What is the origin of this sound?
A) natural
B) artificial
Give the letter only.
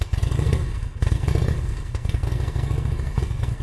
B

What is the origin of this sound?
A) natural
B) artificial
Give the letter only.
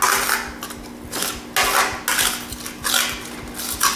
A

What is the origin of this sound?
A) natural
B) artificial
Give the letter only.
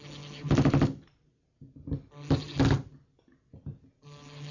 A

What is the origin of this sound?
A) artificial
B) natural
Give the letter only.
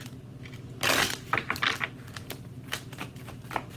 B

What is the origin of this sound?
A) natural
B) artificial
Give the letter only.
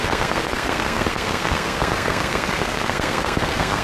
B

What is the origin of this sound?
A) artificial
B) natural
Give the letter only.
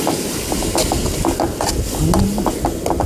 B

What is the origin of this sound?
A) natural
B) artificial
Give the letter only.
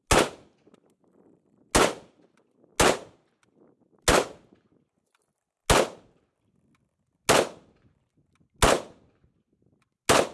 A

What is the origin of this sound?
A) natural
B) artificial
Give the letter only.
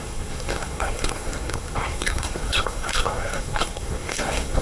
B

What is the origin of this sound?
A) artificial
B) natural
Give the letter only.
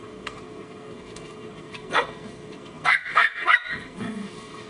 A